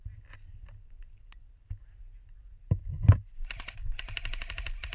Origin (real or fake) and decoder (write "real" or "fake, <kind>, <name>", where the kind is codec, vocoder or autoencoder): real